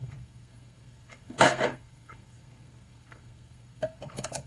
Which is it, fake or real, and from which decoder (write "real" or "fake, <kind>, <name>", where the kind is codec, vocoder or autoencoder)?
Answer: fake, codec, SNAC